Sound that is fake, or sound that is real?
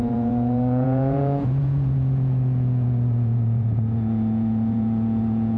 fake